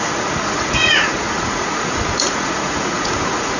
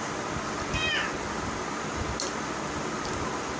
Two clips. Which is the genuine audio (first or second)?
second